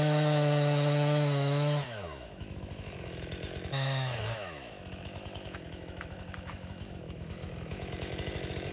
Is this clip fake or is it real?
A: fake